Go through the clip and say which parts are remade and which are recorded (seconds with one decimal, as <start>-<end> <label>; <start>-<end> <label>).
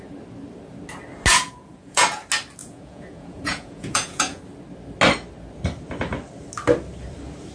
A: 0.0-1.3 recorded; 1.3-2.2 remade; 2.2-2.6 recorded; 2.6-4.4 remade; 4.4-7.5 recorded